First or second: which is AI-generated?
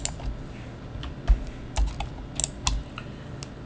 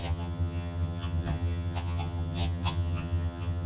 second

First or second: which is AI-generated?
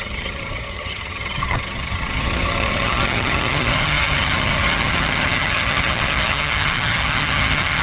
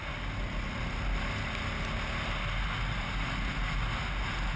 first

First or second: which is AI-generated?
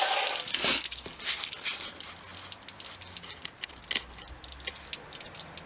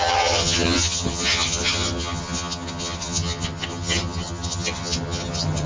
second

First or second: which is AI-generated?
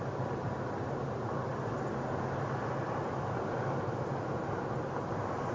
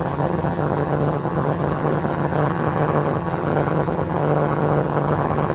second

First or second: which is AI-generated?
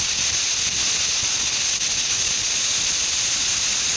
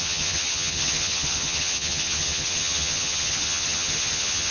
second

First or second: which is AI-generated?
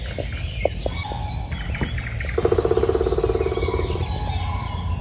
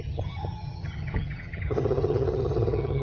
second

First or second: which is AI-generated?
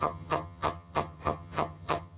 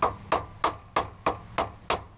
first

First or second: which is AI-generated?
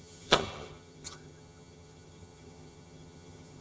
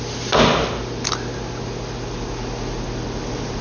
first